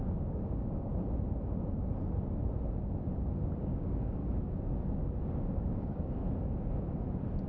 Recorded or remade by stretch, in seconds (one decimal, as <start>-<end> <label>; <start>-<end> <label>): 0.0-0.9 remade; 0.9-3.2 recorded; 3.2-4.2 remade; 4.2-5.4 recorded; 5.4-6.2 remade; 6.2-7.5 recorded